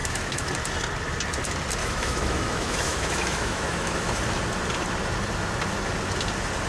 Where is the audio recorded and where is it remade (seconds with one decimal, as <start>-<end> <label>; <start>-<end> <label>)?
0.0-0.5 remade; 0.5-1.8 recorded; 1.8-4.2 remade; 4.2-6.7 recorded